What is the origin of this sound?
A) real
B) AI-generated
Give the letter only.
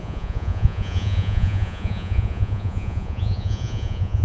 B